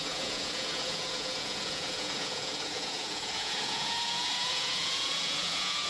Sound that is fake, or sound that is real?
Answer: fake